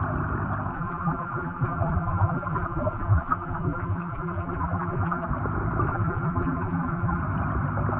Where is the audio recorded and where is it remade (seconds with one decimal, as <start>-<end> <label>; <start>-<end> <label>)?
0.0-0.7 recorded; 0.7-5.3 remade; 5.3-5.9 recorded; 5.9-7.2 remade; 7.2-8.0 recorded